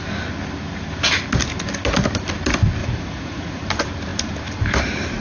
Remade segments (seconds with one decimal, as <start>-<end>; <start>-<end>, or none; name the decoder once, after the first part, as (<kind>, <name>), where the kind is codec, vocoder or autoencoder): 2.8-3.6 (vocoder, Vocos)